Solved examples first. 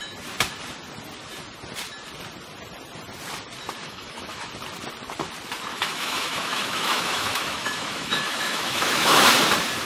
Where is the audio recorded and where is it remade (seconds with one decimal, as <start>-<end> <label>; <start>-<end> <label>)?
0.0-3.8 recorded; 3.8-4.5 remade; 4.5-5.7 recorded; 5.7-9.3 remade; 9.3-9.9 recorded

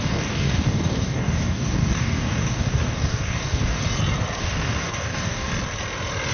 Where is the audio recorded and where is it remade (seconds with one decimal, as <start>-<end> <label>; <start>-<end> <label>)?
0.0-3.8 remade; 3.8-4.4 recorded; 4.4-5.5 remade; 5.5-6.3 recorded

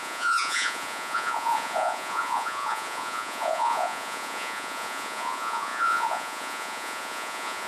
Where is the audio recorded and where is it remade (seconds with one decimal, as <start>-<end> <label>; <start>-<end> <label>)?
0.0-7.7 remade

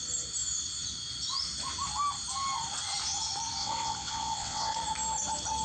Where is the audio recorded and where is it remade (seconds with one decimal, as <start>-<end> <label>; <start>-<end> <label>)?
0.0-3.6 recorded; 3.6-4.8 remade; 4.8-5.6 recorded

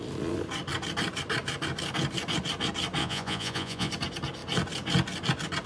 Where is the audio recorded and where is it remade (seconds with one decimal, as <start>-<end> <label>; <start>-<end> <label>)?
0.0-3.0 recorded; 3.0-3.9 remade; 3.9-5.7 recorded

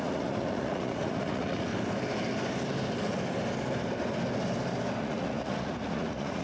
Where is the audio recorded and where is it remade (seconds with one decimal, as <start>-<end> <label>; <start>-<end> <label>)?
0.0-1.7 remade; 1.7-5.0 recorded; 5.0-6.4 remade